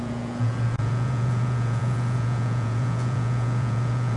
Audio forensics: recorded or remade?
remade